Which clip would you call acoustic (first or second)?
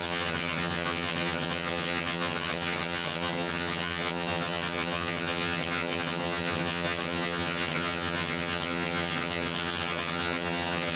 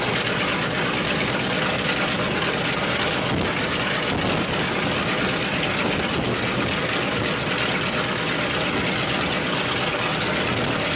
second